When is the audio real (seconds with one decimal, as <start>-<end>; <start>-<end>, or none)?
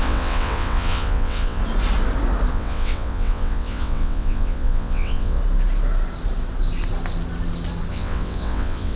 1.6-2.5; 5.4-7.9